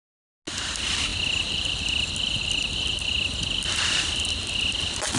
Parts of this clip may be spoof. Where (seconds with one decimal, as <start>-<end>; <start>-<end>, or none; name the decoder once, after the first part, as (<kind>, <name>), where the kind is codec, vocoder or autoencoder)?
none